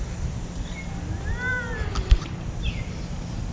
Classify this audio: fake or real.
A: real